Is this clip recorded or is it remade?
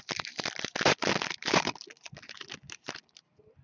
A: recorded